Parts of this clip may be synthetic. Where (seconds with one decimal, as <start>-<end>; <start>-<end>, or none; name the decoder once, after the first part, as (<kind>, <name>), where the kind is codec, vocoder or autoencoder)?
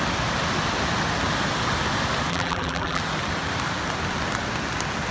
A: 2.3-3.0 (vocoder, BigVGAN v2)